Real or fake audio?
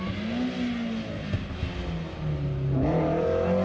real